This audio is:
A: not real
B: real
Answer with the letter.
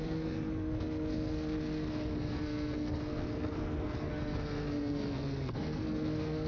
A